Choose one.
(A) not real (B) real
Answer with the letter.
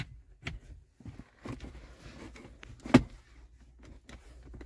B